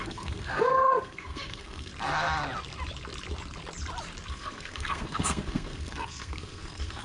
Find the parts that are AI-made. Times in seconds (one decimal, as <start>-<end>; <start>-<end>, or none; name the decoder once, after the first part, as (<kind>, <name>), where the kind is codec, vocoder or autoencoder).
0.0-1.9 (codec, SNAC); 4.3-7.0